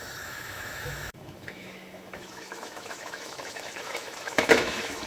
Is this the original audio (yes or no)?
no